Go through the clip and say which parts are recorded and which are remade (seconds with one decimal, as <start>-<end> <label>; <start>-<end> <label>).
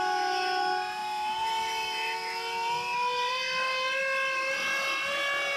0.0-5.6 recorded